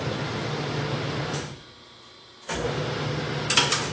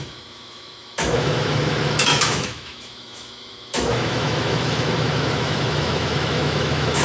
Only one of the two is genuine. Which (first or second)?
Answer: first